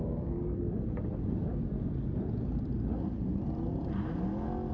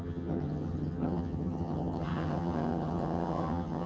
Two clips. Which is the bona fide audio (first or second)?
first